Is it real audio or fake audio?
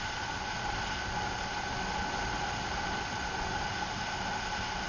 real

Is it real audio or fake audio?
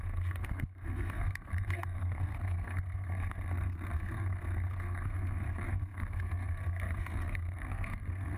fake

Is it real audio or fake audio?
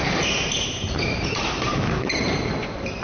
fake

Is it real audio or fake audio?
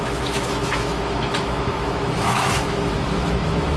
fake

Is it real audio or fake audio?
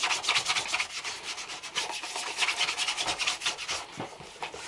real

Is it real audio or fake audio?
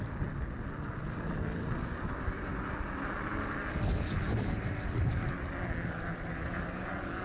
real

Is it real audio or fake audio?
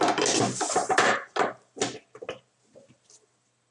real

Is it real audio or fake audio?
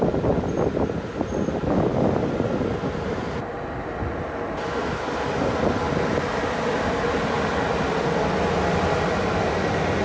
real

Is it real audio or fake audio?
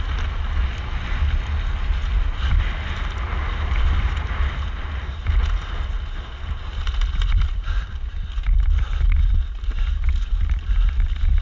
real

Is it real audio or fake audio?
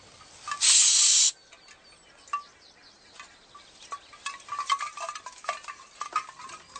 real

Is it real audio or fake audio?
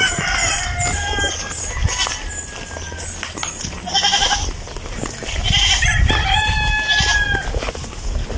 real